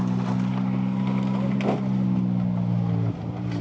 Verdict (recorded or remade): recorded